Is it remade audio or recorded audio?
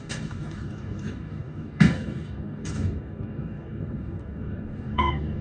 remade